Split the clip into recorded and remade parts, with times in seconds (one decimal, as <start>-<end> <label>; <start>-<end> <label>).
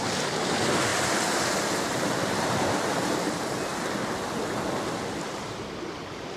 0.0-0.9 remade; 0.9-4.7 recorded; 4.7-6.4 remade